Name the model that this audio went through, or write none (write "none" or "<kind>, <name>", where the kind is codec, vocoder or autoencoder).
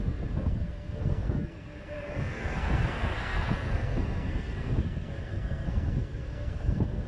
codec, SNAC